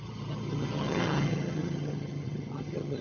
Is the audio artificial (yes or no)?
yes